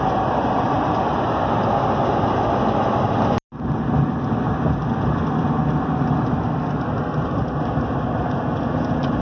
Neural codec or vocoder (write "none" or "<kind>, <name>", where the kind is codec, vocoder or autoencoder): none